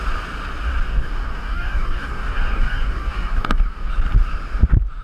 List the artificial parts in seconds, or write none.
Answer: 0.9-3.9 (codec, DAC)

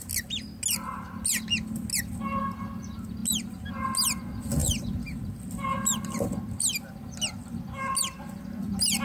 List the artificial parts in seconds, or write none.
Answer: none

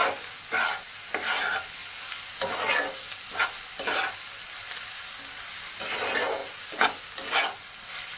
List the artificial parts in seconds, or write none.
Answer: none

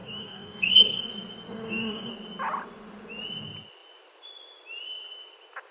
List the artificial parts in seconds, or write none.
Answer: 0.0-1.0 (codec, DAC); 1.5-2.1

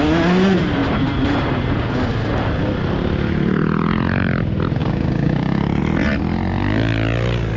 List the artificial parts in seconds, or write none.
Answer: 4.8-5.8 (codec, DAC)

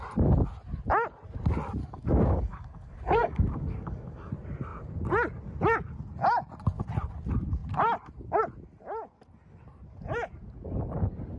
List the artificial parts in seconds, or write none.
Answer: 1.8-4.3 (codec, DAC)